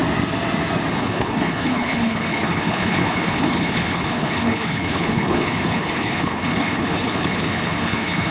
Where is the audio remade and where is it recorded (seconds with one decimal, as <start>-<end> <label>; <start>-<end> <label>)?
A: 0.0-0.9 recorded; 0.9-8.3 remade